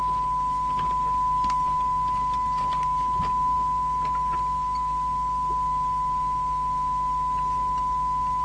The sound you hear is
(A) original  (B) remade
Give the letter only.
A